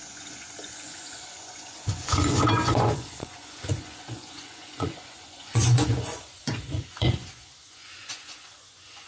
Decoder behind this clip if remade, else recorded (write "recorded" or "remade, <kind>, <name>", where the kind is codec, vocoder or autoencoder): remade, vocoder, Vocos